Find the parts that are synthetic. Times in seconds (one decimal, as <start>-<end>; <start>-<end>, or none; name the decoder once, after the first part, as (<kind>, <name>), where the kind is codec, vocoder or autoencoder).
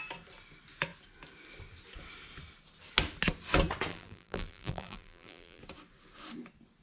3.9-5.6 (vocoder, BigVGAN v2)